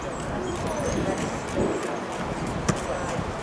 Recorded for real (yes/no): yes